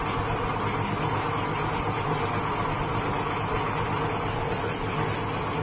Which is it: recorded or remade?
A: recorded